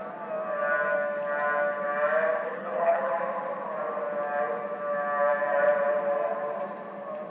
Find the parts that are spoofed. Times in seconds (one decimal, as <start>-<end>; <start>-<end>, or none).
2.5-3.1